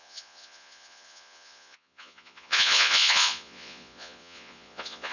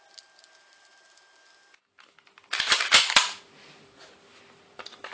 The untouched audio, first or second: second